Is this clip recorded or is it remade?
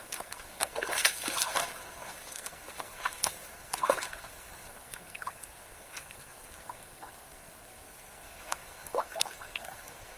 remade